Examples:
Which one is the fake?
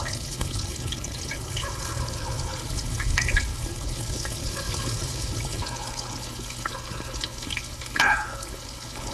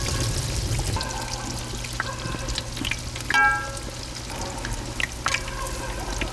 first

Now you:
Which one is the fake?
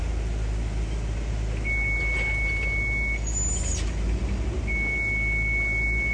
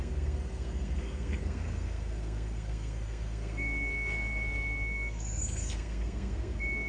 second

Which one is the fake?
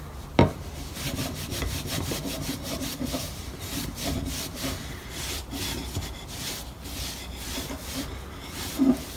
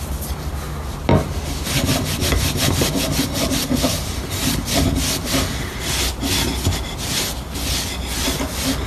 first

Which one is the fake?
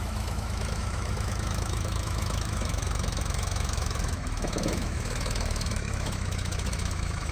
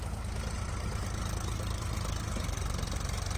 first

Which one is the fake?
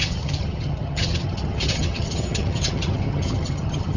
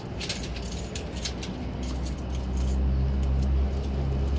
first